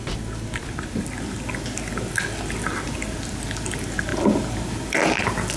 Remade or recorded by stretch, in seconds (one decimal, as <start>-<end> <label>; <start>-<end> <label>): 0.0-5.6 recorded